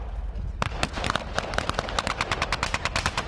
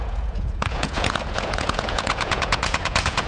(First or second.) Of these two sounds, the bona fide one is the first